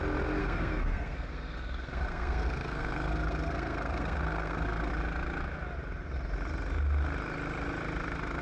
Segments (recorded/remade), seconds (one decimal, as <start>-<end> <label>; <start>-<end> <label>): 0.0-0.4 recorded; 0.4-4.9 remade; 4.9-8.4 recorded